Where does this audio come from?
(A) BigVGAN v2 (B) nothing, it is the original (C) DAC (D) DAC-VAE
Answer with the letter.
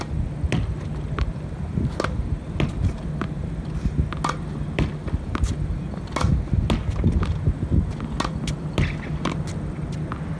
B